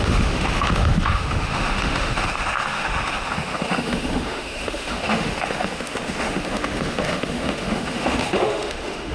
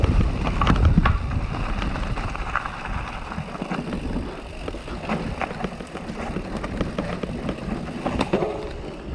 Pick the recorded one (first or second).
second